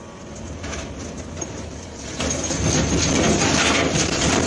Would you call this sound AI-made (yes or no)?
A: no